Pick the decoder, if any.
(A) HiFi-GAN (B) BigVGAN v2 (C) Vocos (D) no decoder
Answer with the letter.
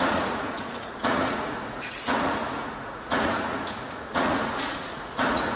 C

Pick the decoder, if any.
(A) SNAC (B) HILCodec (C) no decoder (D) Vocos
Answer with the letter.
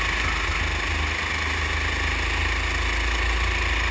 C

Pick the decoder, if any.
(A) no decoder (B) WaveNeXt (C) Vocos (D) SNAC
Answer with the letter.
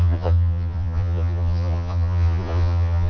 C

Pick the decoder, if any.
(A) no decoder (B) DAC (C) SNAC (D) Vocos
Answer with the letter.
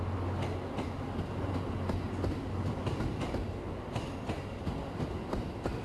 A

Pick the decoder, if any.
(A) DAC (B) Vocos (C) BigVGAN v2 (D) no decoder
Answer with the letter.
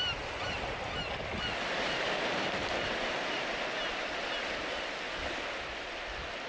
D